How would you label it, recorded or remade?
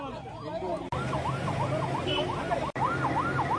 recorded